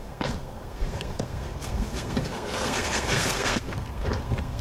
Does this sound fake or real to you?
fake